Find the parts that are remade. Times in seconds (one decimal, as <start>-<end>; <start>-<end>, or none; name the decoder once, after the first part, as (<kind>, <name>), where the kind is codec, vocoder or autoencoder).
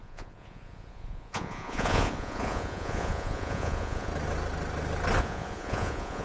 0.0-4.1 (vocoder, Vocos); 5.2-6.2